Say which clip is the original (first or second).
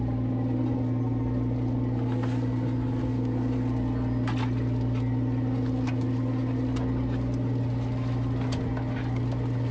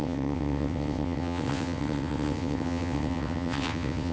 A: first